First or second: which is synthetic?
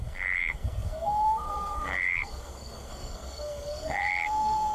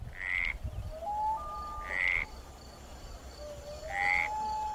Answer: first